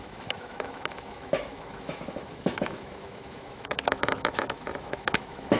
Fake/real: fake